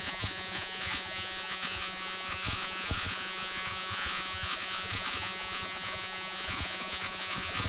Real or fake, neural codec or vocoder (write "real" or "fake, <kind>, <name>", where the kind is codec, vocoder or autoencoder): fake, vocoder, Vocos